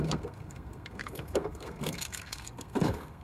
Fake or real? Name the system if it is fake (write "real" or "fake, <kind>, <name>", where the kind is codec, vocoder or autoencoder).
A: fake, codec, SNAC